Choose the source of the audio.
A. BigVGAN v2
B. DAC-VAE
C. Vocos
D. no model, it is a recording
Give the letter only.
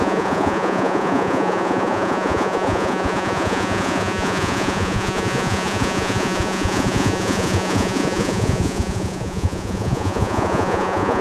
C